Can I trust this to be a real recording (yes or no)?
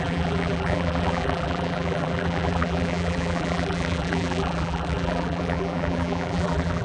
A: no